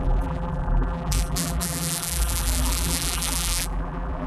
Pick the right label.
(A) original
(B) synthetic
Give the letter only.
B